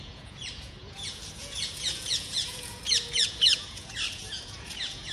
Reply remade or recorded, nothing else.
remade